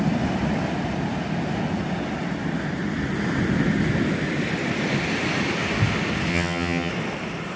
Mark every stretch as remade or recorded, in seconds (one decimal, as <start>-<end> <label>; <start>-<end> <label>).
0.0-6.3 recorded; 6.3-6.9 remade; 6.9-7.6 recorded

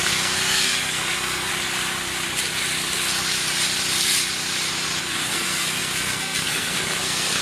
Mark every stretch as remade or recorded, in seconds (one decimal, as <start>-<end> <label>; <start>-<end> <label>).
0.0-1.5 remade; 1.5-5.0 recorded; 5.0-7.4 remade